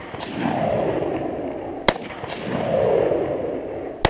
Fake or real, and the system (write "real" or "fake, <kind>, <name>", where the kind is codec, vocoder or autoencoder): real